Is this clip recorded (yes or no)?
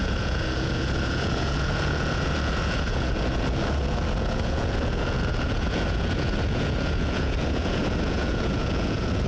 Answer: no